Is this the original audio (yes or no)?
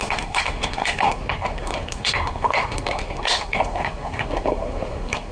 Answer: no